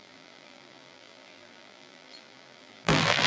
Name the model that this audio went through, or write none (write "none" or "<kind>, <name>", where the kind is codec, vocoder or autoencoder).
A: vocoder, BigVGAN v2